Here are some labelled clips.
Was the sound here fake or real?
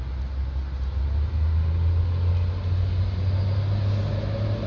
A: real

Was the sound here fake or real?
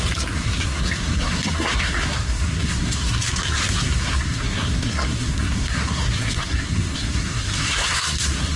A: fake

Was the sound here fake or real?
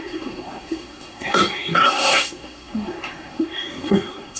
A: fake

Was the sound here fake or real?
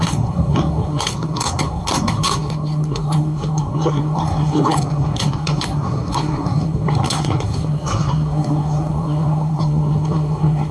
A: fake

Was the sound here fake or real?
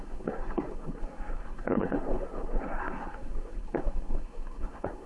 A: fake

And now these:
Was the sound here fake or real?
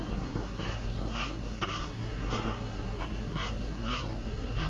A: fake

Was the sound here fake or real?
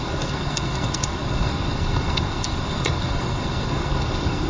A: fake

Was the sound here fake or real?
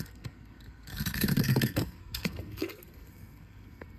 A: fake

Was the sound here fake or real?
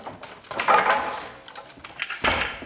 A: real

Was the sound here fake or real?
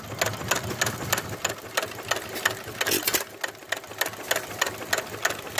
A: real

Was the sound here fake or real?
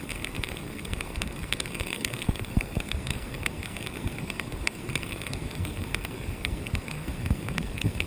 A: fake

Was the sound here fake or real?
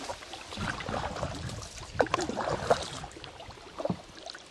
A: real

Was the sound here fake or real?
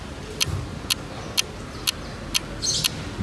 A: real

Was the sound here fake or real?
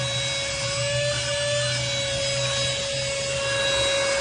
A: real